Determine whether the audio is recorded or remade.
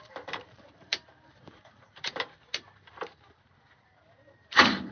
remade